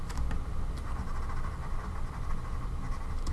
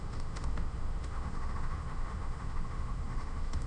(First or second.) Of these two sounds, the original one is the first